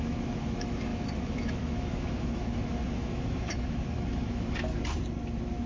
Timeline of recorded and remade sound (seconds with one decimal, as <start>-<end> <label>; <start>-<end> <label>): 0.0-4.7 remade; 4.7-5.7 recorded

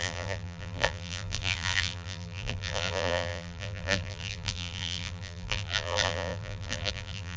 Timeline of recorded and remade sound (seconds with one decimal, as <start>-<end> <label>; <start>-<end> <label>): 0.0-7.4 remade

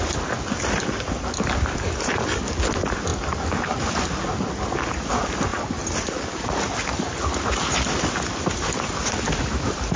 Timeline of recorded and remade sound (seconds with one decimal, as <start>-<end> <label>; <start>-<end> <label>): 0.0-10.0 recorded

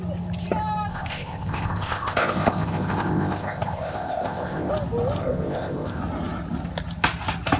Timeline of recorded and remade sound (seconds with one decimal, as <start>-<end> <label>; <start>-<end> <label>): 0.0-0.9 recorded; 0.9-4.7 remade; 4.7-5.2 recorded; 5.2-6.0 remade; 6.0-7.6 recorded

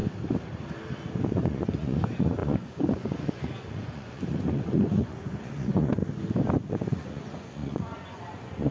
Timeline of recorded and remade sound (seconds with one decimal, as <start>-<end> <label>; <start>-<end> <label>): 0.0-1.3 recorded; 1.3-6.0 remade; 6.0-6.7 recorded; 6.7-8.7 remade

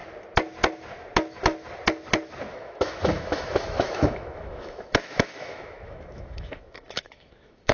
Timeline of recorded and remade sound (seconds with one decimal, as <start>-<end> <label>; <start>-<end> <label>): 0.0-2.5 recorded; 2.5-7.7 remade

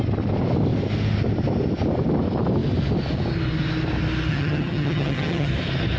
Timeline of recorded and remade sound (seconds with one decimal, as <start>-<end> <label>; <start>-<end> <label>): 0.0-4.3 recorded; 4.3-5.5 remade; 5.5-6.0 recorded

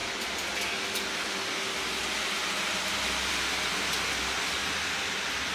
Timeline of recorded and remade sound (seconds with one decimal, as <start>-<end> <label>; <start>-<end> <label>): 0.0-5.5 recorded